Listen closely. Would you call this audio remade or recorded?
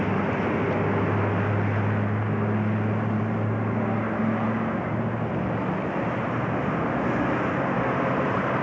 recorded